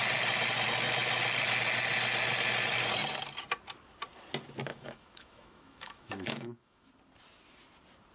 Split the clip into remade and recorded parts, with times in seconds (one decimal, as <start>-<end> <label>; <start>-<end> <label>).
0.0-4.7 recorded; 4.7-6.9 remade; 6.9-8.1 recorded